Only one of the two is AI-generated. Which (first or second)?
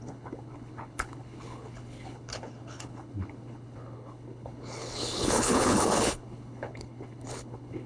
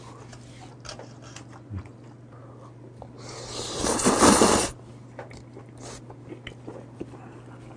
first